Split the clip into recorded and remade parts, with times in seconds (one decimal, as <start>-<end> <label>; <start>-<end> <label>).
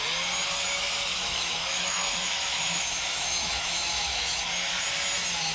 0.0-1.1 recorded; 1.1-4.4 remade; 4.4-5.5 recorded